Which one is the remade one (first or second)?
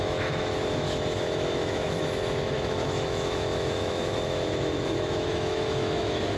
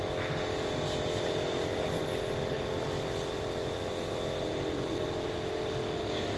first